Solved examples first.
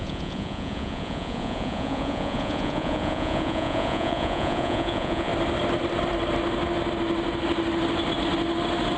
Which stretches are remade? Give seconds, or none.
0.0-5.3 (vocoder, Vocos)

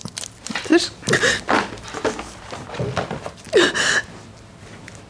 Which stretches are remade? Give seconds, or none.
none

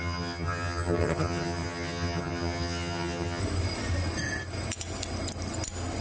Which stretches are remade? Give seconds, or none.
0.0-3.4 (vocoder, HiFi-GAN)

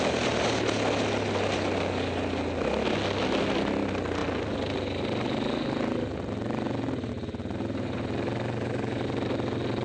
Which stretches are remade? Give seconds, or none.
none

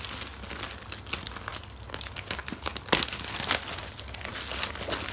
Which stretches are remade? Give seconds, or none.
none

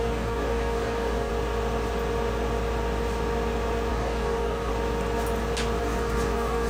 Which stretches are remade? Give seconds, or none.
0.0-1.3 (codec, DAC); 3.9-4.7; 5.8-6.7

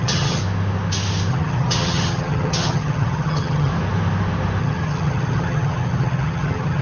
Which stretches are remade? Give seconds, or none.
0.0-0.4 (vocoder, HiFi-GAN); 1.3-3.7; 4.6-6.8

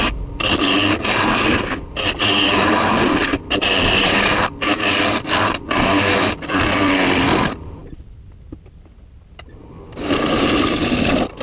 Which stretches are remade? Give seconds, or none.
none